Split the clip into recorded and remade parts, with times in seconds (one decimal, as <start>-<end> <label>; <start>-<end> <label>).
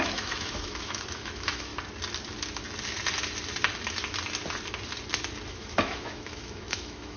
0.0-1.7 remade; 1.7-5.5 recorded; 5.5-7.2 remade